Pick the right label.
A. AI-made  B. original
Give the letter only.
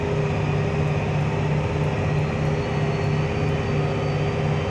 B